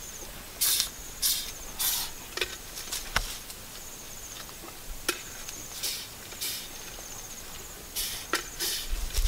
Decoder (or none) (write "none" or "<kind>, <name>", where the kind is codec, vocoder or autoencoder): none